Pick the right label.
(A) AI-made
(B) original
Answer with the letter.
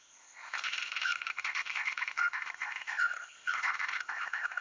A